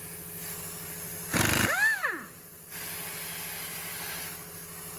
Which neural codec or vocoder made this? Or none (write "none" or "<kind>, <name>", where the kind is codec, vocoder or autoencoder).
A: none